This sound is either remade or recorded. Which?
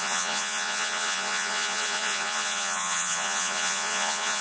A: remade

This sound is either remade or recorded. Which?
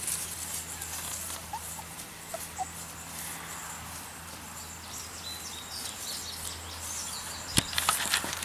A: recorded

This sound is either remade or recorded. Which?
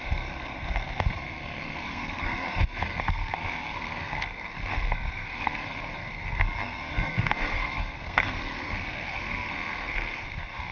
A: remade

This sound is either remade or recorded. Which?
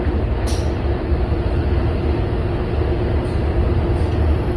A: recorded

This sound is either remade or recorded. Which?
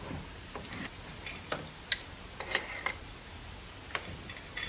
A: recorded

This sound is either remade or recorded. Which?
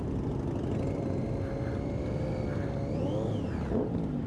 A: recorded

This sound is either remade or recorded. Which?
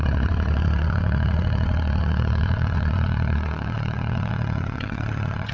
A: remade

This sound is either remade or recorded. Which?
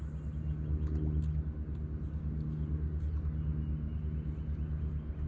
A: recorded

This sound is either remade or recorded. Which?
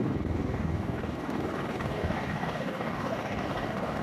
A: remade